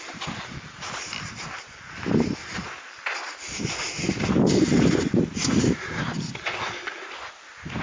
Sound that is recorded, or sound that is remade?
recorded